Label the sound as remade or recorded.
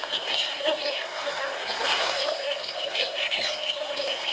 remade